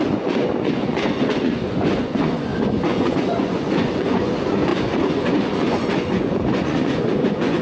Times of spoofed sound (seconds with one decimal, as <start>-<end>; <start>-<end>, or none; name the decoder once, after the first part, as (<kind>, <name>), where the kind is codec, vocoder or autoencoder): 0.0-7.6 (vocoder, Vocos)